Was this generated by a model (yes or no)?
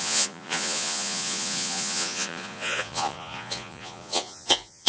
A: yes